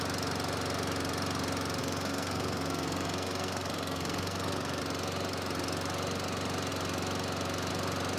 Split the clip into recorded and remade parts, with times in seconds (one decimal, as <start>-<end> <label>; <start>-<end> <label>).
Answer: 0.0-1.8 recorded; 1.8-4.8 remade; 4.8-8.2 recorded